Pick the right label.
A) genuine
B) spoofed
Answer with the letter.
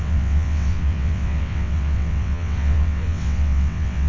B